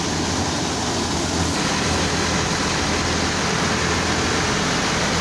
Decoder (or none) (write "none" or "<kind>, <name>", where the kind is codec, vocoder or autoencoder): none